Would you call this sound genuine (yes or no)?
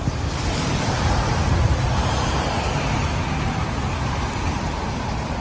yes